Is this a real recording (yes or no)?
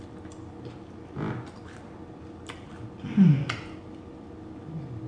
yes